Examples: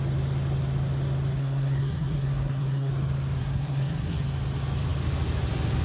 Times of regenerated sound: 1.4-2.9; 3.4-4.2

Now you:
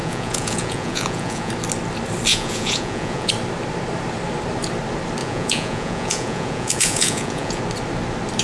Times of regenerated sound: 0.0-1.5; 2.3-3.3; 5.2-7.6

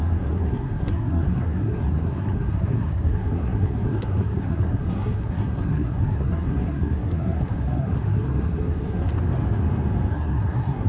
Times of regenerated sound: 0.0-9.1; 10.1-10.9

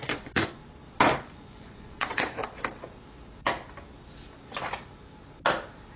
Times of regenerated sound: 0.0-0.6; 1.2-2.4

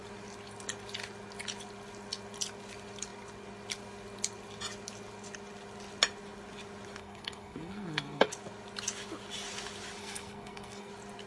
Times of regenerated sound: 7.0-8.3; 10.0-10.9

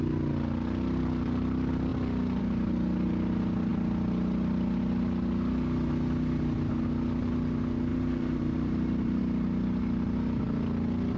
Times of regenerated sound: 7.9-9.2